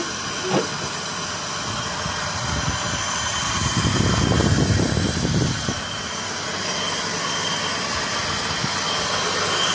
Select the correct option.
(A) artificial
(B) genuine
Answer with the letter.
B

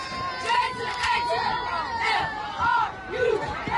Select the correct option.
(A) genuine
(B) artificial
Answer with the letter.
A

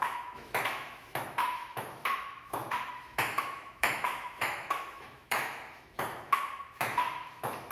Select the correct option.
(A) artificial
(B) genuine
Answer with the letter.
A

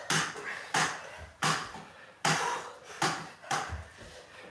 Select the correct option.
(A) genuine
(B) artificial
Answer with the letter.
A